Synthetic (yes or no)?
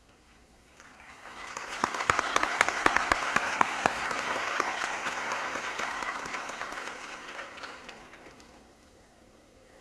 yes